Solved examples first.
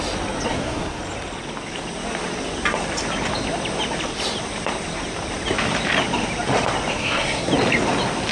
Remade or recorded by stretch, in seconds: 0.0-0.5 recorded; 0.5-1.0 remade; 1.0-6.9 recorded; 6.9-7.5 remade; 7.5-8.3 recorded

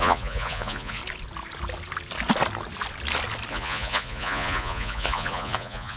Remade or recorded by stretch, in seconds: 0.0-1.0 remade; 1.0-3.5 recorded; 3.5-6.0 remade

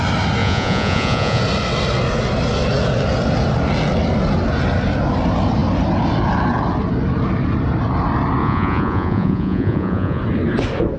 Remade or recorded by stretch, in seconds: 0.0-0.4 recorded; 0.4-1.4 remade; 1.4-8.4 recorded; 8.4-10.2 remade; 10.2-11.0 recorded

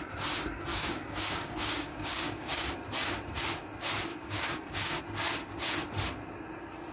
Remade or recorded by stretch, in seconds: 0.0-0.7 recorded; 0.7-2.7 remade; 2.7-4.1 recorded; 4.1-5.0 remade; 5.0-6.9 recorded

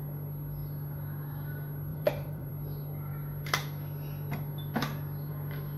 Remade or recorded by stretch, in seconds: 0.0-1.9 recorded; 1.9-2.5 remade; 2.5-5.8 recorded

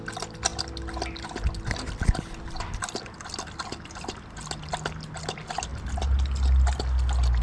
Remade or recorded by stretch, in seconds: 0.0-7.4 recorded

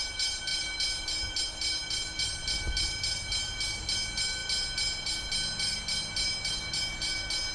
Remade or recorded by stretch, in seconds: 0.0-7.5 recorded